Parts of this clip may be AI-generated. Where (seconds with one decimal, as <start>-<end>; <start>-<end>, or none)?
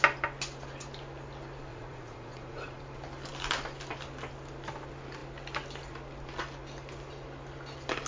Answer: 1.7-2.8